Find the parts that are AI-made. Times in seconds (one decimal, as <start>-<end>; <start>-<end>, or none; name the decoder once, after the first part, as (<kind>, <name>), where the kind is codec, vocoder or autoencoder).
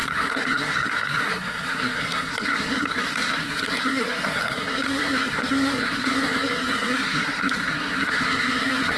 0.0-9.0 (codec, SNAC)